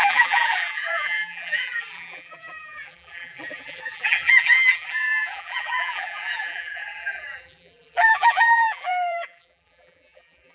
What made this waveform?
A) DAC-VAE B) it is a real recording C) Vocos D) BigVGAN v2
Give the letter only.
D